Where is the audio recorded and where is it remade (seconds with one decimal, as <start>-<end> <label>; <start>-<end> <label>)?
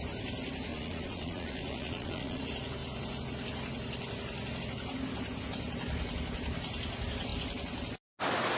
0.0-0.7 recorded; 0.7-2.4 remade; 2.4-8.6 recorded